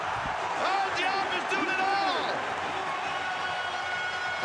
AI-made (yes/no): no